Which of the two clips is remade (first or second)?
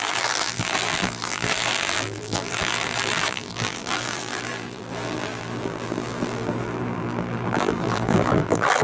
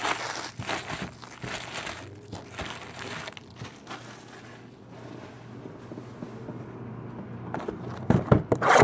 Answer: first